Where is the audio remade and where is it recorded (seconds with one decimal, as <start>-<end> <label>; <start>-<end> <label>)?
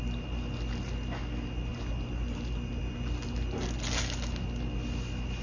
0.0-5.4 recorded